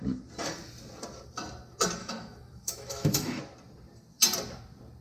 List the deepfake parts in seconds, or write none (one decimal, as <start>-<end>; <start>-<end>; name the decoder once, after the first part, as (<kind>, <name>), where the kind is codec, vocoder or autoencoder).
2.0-3.4 (autoencoder, DAC-VAE)